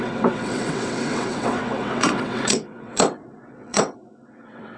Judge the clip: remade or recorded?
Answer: remade